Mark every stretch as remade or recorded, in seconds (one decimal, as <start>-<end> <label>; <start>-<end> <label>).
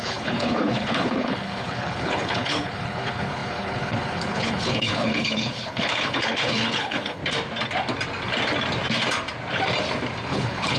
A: 0.0-7.2 remade; 7.2-10.3 recorded; 10.3-10.8 remade